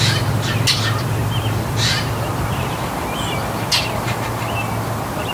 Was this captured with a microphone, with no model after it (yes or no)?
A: yes